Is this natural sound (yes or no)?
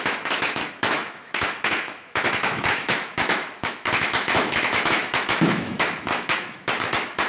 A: no